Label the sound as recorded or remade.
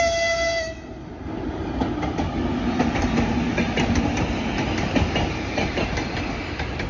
recorded